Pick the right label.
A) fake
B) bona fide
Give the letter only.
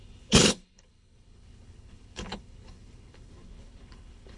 A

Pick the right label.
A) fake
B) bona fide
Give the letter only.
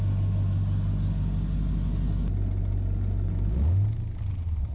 B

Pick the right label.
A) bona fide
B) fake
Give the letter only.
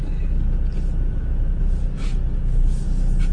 A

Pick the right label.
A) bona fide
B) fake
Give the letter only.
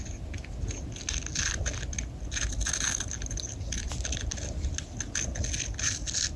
A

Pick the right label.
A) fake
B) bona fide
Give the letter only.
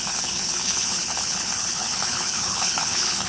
A